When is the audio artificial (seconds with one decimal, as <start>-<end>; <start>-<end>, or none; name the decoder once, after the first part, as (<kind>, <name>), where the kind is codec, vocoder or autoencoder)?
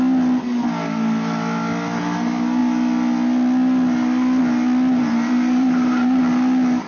5.0-6.2 (vocoder, BigVGAN v2)